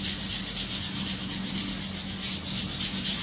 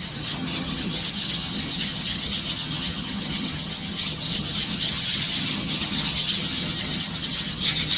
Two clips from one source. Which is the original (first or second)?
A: first